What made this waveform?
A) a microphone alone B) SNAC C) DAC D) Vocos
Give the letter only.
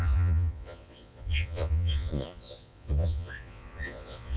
D